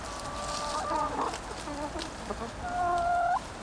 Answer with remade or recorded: recorded